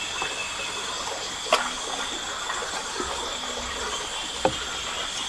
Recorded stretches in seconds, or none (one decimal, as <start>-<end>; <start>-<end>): 0.0-0.4; 1.3-2.6; 3.7-5.3